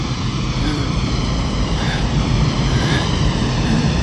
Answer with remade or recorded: remade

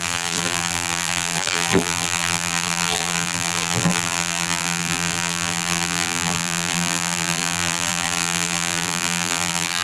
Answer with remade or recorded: remade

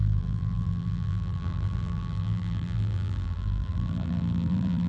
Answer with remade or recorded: remade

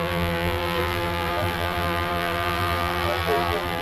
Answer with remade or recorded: remade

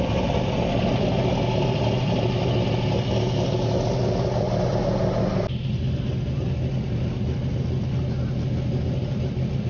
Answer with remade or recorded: recorded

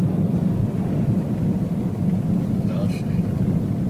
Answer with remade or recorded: recorded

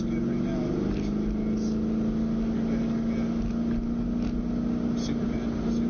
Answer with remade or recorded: recorded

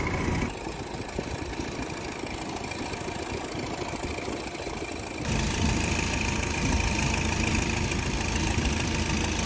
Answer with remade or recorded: recorded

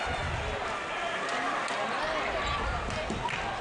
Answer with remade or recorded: recorded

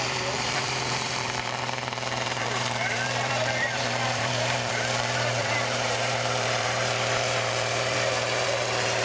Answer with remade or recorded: remade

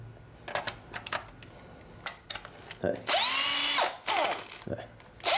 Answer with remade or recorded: recorded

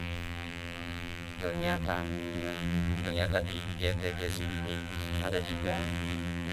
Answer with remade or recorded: remade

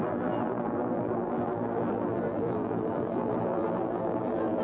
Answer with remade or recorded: remade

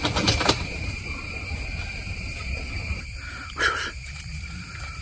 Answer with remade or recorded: remade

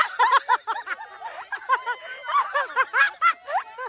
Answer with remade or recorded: recorded